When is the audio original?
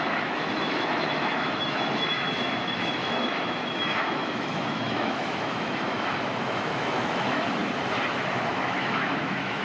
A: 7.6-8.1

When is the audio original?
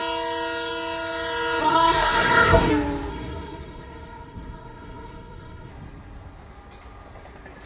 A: 0.0-1.6; 2.7-3.1; 5.7-7.7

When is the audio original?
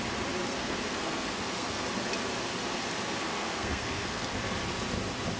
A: 0.0-0.5; 1.8-3.3; 4.4-5.4